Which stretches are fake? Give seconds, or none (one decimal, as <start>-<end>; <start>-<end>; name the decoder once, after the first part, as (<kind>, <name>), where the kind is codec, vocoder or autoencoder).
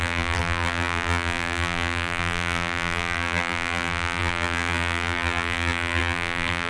0.0-6.7 (vocoder, BigVGAN v2)